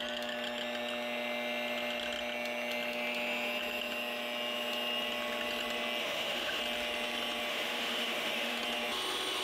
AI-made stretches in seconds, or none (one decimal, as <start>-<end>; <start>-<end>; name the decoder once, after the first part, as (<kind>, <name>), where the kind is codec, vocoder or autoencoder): 6.0-6.6 (autoencoder, DAC-VAE); 7.5-8.6